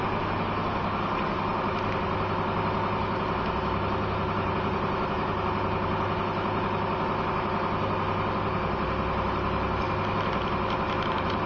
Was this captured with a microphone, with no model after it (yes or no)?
yes